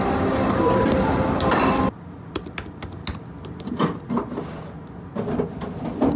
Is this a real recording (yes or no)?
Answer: yes